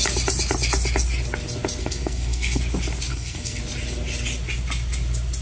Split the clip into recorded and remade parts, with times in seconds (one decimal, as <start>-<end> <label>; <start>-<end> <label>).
0.0-1.8 recorded; 1.8-2.6 remade; 2.6-3.1 recorded; 3.1-3.6 remade; 3.6-5.4 recorded